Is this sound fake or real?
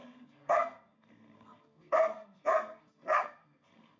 fake